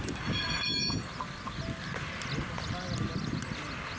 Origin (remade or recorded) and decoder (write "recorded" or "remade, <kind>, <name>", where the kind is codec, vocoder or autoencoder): recorded